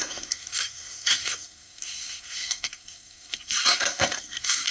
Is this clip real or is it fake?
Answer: fake